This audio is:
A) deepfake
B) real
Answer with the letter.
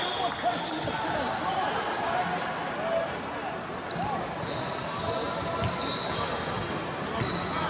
B